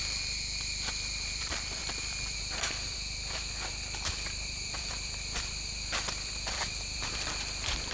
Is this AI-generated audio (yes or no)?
yes